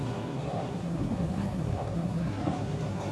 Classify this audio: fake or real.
fake